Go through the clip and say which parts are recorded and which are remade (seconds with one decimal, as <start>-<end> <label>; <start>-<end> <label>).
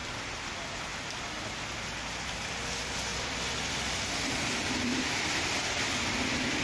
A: 0.0-0.6 remade; 0.6-3.1 recorded; 3.1-4.0 remade; 4.0-4.9 recorded; 4.9-6.6 remade